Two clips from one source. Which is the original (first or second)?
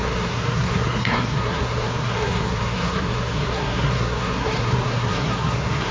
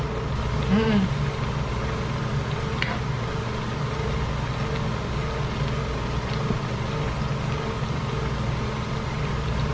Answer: second